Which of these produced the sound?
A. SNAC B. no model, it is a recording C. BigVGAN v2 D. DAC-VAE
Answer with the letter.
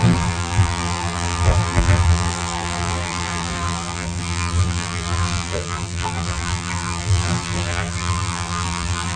C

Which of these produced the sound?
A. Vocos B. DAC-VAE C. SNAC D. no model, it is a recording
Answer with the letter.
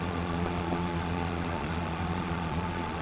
A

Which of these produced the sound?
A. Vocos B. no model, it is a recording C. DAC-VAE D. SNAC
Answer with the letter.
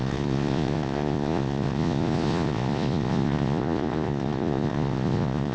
A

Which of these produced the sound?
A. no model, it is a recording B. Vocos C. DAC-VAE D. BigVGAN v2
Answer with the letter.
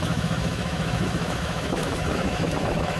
C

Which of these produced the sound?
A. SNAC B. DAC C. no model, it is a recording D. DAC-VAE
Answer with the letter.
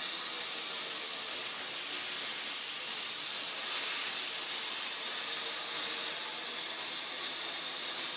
C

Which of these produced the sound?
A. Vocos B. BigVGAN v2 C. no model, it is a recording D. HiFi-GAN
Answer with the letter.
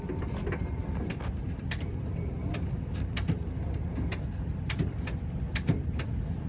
C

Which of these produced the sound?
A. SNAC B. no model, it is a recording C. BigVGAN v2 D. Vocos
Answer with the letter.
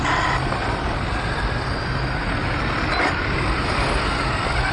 B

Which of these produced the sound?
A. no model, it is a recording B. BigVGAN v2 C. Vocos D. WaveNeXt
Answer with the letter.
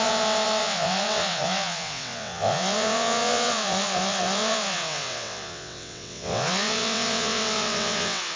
D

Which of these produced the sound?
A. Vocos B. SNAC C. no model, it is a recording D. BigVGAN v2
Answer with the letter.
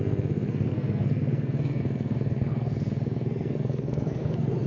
B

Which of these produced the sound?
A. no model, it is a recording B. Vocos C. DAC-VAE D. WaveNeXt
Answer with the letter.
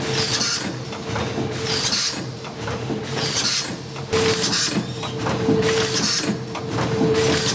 A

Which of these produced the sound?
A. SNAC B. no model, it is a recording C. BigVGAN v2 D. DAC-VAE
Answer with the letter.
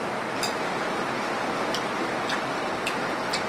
B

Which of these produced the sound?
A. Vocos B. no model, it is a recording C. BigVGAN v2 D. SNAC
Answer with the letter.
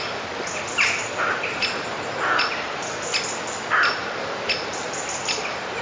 B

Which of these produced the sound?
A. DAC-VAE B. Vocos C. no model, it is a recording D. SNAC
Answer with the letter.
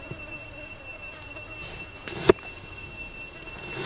C